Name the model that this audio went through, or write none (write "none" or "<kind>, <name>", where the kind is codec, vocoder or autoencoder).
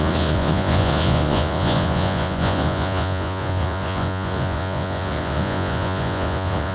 vocoder, Vocos